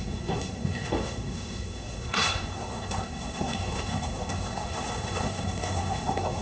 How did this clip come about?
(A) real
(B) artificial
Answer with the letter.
B